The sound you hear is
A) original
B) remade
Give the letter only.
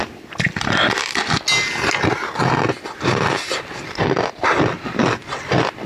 A